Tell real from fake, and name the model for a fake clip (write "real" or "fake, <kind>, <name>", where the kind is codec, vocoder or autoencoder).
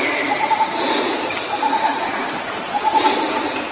real